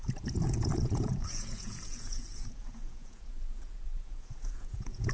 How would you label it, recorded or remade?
remade